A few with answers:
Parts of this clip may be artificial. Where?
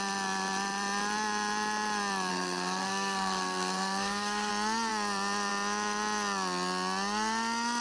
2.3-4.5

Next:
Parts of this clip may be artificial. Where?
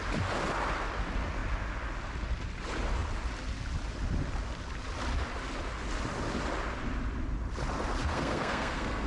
8.0-9.1